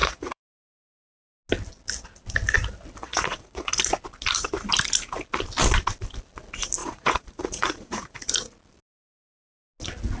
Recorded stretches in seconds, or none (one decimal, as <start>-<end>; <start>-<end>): 0.6-3.0; 3.7-6.8; 8.3-10.2